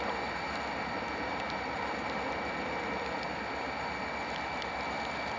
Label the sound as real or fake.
real